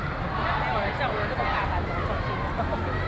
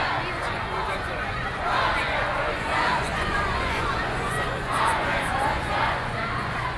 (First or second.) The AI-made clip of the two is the second